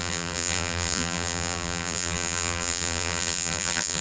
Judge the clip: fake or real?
fake